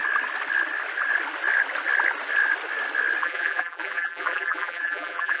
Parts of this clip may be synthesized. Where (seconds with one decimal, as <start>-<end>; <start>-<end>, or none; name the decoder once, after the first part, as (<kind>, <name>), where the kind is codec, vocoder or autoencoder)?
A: 3.2-5.4 (vocoder, BigVGAN v2)